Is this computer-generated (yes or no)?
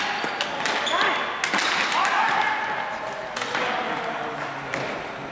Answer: no